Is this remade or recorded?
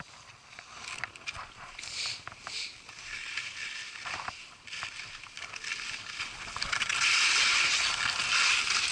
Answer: recorded